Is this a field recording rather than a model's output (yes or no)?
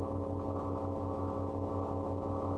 yes